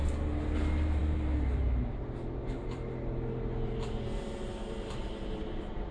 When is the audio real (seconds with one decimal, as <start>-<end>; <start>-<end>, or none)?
0.0-5.9